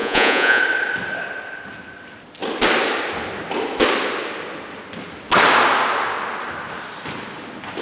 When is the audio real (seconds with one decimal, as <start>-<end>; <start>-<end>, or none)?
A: 0.6-7.8